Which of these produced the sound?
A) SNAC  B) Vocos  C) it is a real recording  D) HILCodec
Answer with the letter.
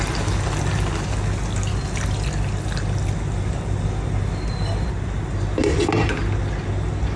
C